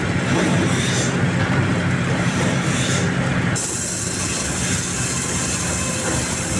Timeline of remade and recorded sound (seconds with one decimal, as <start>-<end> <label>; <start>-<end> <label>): 0.0-1.7 recorded; 1.7-2.4 remade; 2.4-6.6 recorded